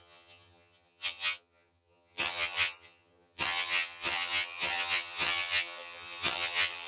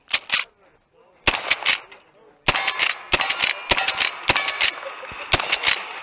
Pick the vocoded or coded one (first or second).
first